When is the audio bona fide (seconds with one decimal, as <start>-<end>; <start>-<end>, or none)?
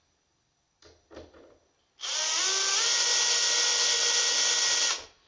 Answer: 0.0-5.3